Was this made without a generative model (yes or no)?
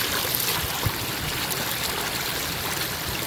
yes